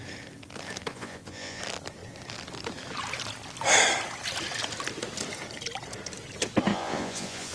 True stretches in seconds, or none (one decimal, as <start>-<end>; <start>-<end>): 0.0-0.9; 1.6-6.7